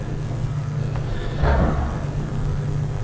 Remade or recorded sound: remade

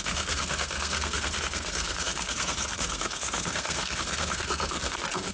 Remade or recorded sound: remade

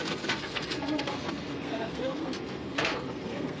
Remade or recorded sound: remade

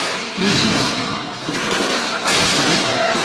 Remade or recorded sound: remade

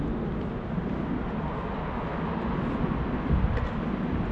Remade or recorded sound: recorded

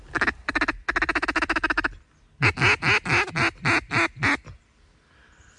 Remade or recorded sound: recorded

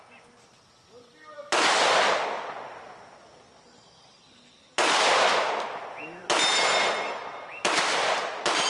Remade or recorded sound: recorded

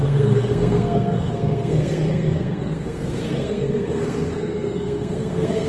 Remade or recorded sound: remade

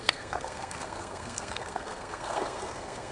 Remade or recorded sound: remade